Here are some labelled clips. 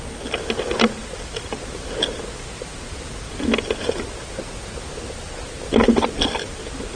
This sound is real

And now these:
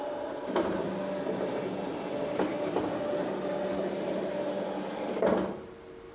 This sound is real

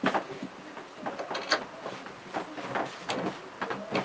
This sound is real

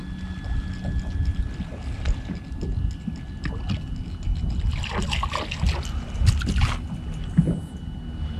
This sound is real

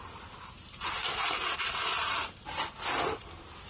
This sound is real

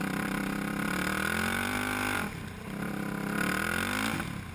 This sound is real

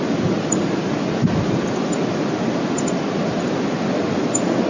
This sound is real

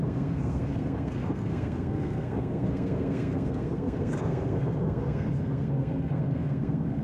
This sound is fake